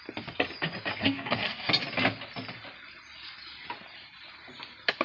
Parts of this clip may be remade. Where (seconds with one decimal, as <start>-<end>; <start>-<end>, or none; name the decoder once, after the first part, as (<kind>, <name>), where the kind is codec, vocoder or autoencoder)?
1.0-1.7 (codec, SNAC)